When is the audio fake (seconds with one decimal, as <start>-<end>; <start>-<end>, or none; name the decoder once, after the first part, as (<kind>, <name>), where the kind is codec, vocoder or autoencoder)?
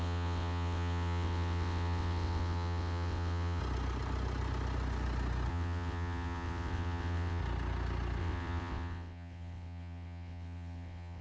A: 0.0-3.6 (vocoder, WaveNeXt); 5.5-7.4; 8.2-11.2